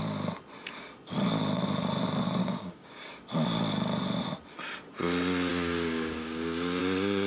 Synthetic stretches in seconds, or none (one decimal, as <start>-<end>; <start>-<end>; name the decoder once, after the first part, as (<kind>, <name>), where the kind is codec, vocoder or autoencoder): 2.4-3.1 (codec, DAC); 5.5-6.8